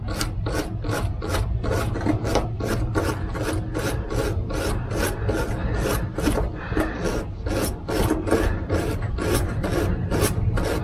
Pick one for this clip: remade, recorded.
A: recorded